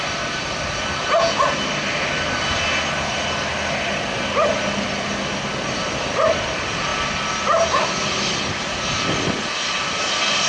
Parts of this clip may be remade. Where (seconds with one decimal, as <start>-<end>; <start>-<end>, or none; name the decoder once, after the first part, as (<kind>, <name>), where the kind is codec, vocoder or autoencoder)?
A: none